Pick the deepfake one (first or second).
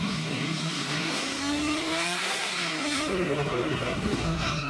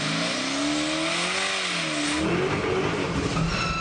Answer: first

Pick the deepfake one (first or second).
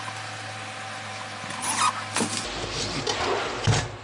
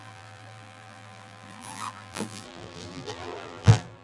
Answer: second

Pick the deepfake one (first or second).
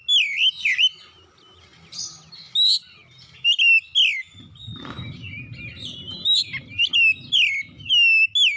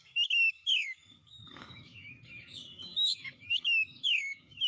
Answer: second